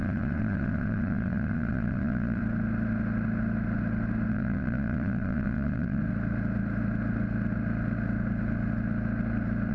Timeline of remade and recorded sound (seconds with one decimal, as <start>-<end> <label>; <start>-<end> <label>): 0.0-2.4 remade; 2.4-4.3 recorded; 4.3-6.0 remade; 6.0-9.7 recorded